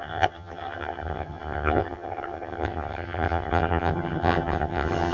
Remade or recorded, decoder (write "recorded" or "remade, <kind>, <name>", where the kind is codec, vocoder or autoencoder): remade, vocoder, HiFi-GAN